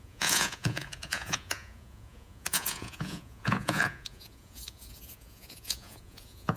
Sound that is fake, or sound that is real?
fake